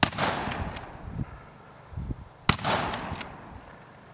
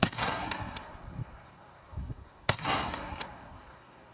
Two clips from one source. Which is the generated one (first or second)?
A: second